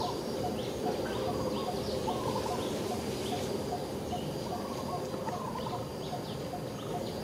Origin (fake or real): real